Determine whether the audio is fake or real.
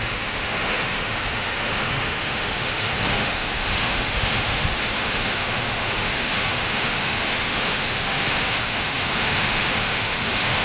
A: fake